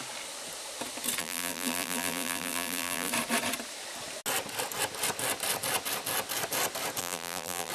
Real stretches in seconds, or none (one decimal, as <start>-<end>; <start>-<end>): 0.0-1.2; 3.1-7.0